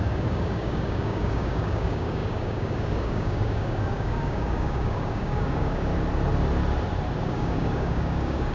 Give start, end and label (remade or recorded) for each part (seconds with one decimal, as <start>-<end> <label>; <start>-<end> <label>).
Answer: 0.0-5.9 remade; 5.9-7.2 recorded; 7.2-8.5 remade